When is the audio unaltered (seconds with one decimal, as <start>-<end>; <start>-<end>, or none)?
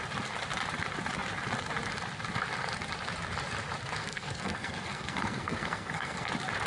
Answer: 0.0-4.0; 6.3-6.7